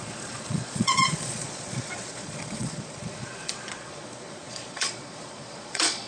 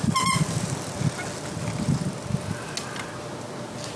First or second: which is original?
second